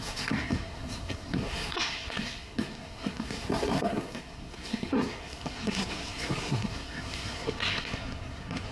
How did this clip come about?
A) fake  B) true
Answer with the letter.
A